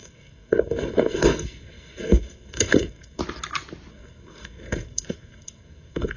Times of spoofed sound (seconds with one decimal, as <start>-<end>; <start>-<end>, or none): 0.0-3.2; 3.9-6.2

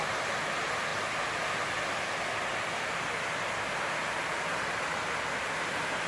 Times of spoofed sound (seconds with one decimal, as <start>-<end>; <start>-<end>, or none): none